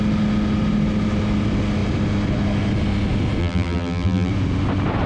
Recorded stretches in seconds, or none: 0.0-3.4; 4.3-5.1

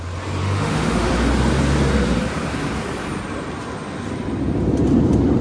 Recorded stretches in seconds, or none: 0.0-0.4; 1.1-5.4

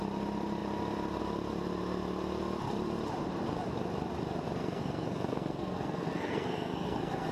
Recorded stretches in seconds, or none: 0.0-4.6

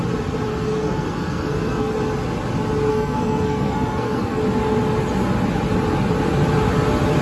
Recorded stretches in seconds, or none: 0.0-0.5; 1.9-2.9; 4.4-7.2

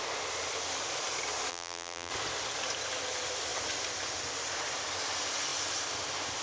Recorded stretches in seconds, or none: 0.0-1.5; 2.1-6.4